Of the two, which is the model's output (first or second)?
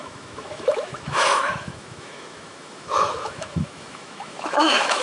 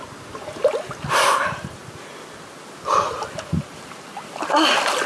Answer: first